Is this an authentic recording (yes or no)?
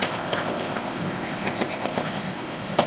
no